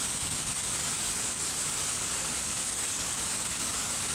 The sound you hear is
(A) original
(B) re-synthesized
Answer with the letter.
B